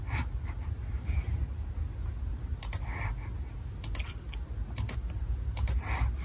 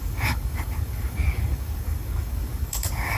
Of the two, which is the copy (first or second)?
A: second